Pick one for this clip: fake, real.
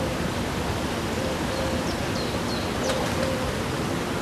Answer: real